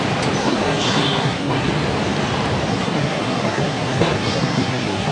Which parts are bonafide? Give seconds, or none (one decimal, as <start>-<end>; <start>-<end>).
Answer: 0.0-0.4; 1.7-2.7